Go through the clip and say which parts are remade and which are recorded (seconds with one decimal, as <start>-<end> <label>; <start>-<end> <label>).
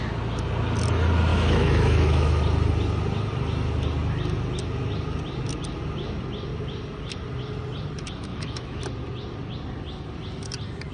0.0-1.3 recorded; 1.3-2.4 remade; 2.4-8.3 recorded; 8.3-8.8 remade; 8.8-10.9 recorded